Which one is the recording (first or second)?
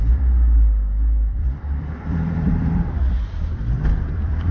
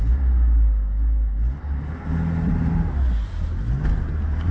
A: second